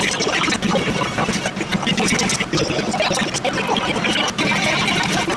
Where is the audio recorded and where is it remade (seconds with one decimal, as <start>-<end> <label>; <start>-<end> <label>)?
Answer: 0.0-5.4 recorded